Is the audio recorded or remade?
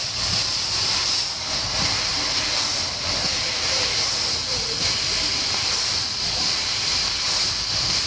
remade